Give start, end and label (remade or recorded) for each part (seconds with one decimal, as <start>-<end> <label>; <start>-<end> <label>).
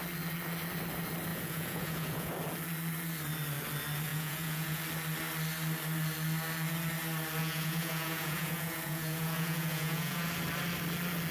0.0-1.3 recorded; 1.3-2.3 remade; 2.3-4.1 recorded; 4.1-4.8 remade; 4.8-7.4 recorded; 7.4-10.3 remade; 10.3-11.3 recorded